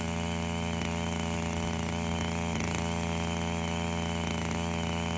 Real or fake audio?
real